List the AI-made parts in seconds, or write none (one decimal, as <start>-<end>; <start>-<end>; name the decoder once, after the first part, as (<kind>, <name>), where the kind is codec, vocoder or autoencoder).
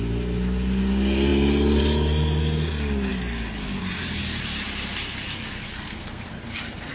5.7-6.4 (codec, SNAC)